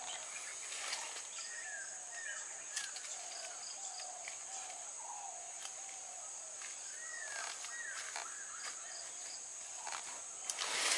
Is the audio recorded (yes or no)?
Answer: yes